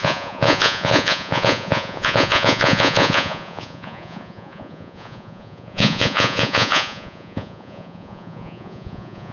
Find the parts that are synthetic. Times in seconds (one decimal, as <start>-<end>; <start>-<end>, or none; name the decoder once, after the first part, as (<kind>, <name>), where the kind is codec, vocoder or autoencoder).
0.0-9.3 (vocoder, Vocos)